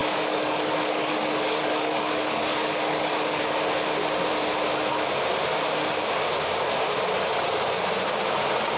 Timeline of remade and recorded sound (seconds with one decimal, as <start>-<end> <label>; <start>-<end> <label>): 0.0-3.4 remade; 3.4-8.8 recorded